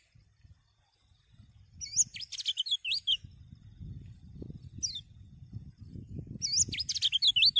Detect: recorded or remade recorded